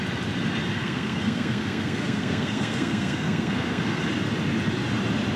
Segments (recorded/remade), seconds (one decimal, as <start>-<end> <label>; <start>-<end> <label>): 0.0-0.8 recorded; 0.8-4.0 remade; 4.0-5.4 recorded